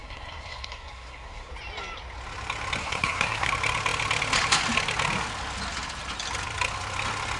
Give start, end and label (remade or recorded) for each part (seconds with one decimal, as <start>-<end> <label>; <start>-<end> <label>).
0.0-1.5 remade; 1.5-2.8 recorded; 2.8-3.5 remade; 3.5-7.4 recorded